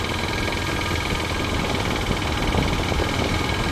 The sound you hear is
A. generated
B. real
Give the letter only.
B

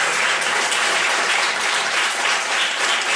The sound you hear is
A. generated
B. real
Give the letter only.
A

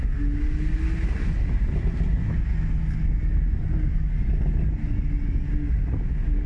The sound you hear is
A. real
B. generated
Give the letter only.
A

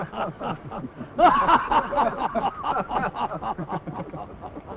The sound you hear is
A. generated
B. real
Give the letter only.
B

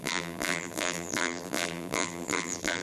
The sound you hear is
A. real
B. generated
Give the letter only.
B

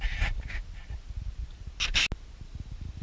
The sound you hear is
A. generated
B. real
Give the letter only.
B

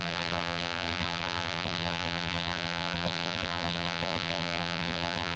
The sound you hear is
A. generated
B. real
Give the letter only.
A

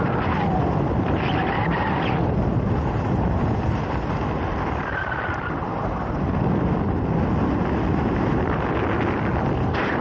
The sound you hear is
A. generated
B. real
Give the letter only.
B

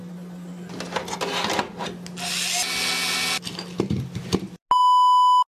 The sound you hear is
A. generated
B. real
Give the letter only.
B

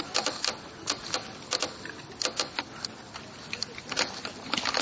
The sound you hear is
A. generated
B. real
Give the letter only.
B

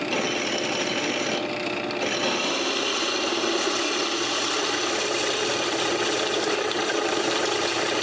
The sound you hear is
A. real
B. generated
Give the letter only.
A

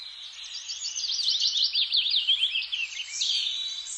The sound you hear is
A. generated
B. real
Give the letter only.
A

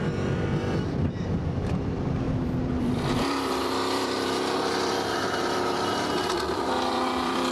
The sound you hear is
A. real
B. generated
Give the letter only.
B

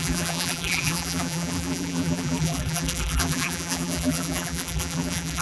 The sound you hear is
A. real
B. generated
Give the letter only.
B